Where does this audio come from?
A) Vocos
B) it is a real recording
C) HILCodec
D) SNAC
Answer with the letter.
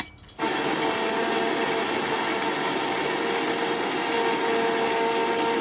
B